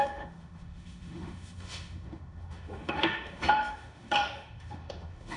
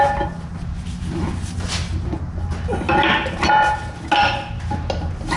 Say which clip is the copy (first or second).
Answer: first